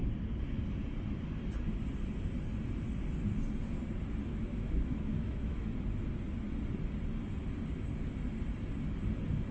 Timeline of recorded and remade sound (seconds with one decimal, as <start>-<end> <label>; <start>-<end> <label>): 0.0-4.3 recorded; 4.3-5.7 remade; 5.7-9.5 recorded